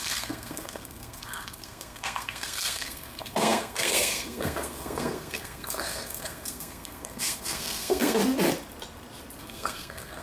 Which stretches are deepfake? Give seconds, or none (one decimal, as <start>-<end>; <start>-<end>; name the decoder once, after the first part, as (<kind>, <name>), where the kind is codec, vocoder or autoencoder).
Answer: 0.0-8.2 (codec, SNAC); 9.4-10.2